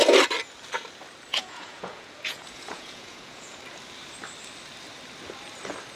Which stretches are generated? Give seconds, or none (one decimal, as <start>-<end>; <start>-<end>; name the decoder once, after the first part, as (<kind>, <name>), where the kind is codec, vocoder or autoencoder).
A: 1.3-3.6 (vocoder, Vocos)